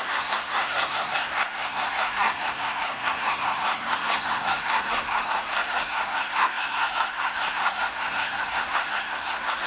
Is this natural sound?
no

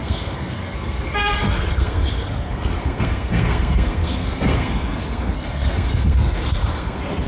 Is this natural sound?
no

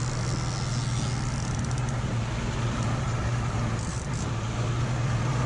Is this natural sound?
yes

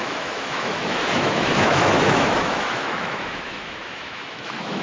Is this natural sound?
no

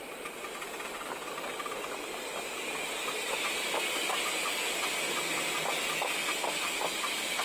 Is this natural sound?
yes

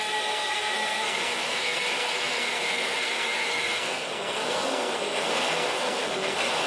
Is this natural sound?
no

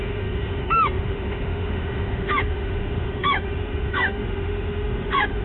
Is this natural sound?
no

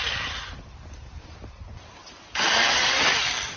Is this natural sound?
yes